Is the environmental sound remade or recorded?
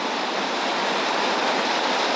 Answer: recorded